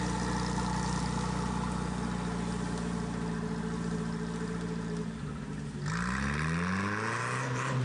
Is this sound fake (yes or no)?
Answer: no